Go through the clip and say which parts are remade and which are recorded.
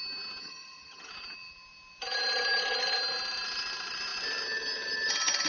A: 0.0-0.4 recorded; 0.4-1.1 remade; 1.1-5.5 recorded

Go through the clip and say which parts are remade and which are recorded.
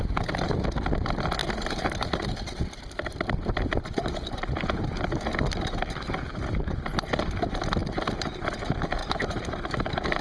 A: 0.0-1.4 recorded; 1.4-4.1 remade; 4.1-9.0 recorded; 9.0-10.2 remade